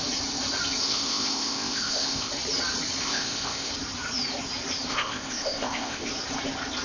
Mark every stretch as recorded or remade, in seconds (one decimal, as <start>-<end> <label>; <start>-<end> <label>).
0.0-0.8 recorded; 0.8-2.3 remade; 2.3-3.0 recorded; 3.0-3.7 remade; 3.7-4.9 recorded; 4.9-6.1 remade; 6.1-6.8 recorded